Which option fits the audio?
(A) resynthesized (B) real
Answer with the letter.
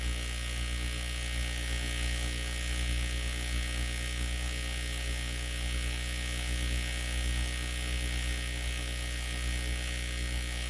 B